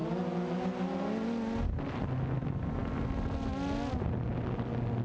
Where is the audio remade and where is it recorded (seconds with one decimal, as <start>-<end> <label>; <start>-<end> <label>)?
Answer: 0.0-5.0 recorded